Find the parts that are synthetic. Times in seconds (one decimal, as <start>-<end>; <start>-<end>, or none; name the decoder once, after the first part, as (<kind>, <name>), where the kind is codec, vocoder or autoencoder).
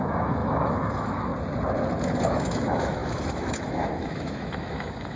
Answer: 0.0-1.3 (autoencoder, DAC-VAE); 2.0-5.2